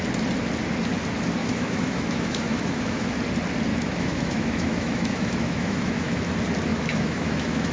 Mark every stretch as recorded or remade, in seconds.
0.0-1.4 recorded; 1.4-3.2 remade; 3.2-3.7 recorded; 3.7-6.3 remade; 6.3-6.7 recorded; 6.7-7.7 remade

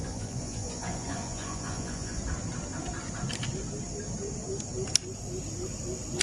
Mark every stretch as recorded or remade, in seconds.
0.0-2.2 remade; 2.2-6.2 recorded

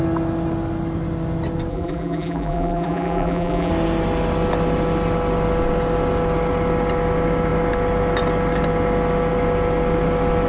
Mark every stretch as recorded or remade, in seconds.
0.0-1.7 recorded; 1.7-3.7 remade; 3.7-10.5 recorded